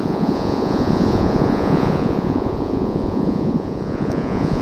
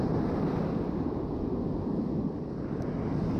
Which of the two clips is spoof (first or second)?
first